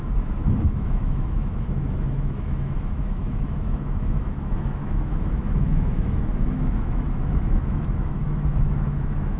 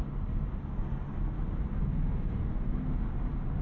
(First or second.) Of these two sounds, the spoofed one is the first